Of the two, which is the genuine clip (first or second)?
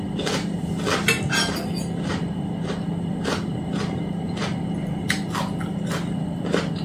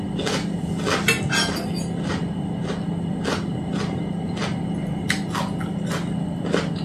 second